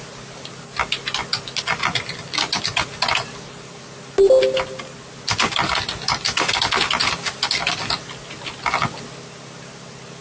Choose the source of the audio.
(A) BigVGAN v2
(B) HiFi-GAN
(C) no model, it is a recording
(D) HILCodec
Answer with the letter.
C